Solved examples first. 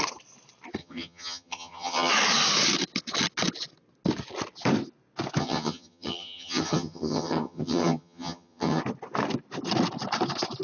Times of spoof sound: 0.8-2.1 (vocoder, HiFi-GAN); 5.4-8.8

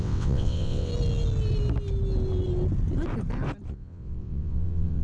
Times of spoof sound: 0.0-0.9 (vocoder, WaveNeXt); 3.7-5.0

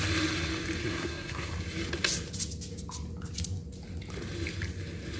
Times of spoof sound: 0.8-1.5 (codec, SNAC)

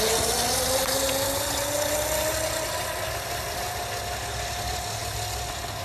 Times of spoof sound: none

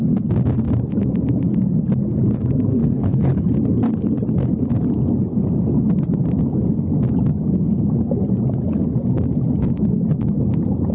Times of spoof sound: 2.8-3.5 (codec, HILCodec)

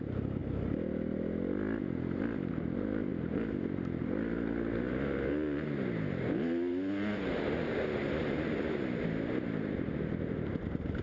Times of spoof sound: none